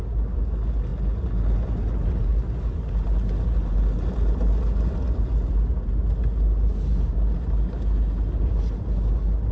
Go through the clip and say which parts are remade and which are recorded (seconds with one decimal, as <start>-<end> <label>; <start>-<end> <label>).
0.0-9.5 recorded